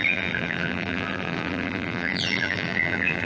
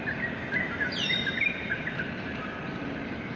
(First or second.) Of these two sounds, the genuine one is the second